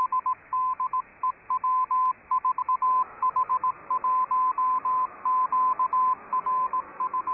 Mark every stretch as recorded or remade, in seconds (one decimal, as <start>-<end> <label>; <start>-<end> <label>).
0.0-1.1 remade; 1.1-2.6 recorded; 2.6-3.5 remade; 3.5-6.3 recorded; 6.3-7.3 remade